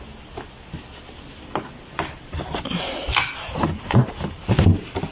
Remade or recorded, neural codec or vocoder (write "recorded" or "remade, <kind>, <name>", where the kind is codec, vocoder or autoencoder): recorded